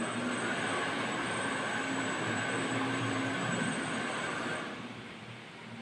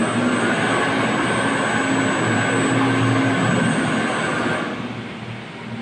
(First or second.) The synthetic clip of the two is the first